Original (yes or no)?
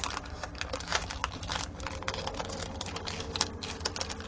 yes